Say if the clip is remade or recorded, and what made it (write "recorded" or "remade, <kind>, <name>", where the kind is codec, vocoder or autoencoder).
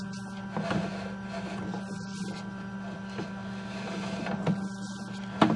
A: recorded